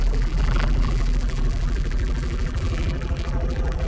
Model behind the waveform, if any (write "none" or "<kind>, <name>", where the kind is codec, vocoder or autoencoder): vocoder, BigVGAN v2